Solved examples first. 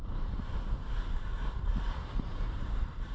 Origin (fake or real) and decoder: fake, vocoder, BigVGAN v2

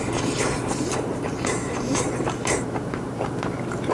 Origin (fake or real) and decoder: fake, vocoder, BigVGAN v2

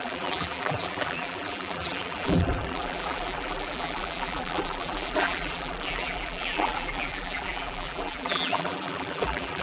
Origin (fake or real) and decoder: fake, vocoder, BigVGAN v2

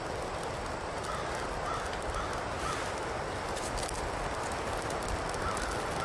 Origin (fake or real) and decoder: real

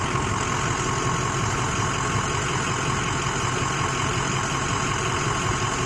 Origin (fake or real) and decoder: real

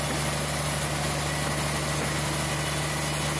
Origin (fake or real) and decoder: real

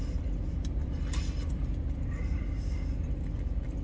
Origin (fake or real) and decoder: fake, vocoder, BigVGAN v2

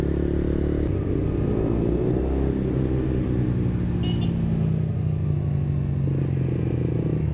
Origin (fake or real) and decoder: real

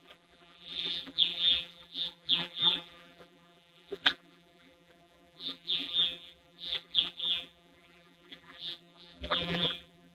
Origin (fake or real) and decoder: fake, vocoder, BigVGAN v2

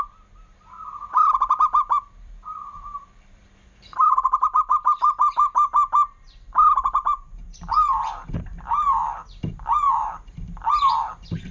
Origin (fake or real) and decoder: fake, vocoder, BigVGAN v2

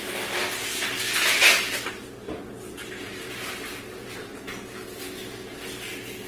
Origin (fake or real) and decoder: real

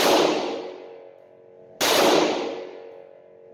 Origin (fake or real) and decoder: real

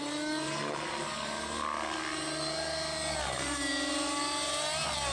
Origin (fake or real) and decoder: real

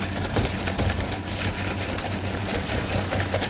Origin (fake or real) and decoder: fake, vocoder, BigVGAN v2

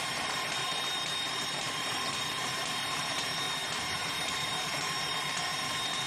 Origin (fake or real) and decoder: fake, vocoder, BigVGAN v2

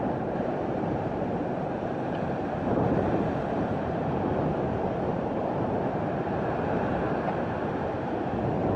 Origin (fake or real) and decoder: fake, vocoder, BigVGAN v2